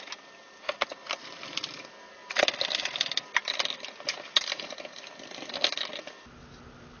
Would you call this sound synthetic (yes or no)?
no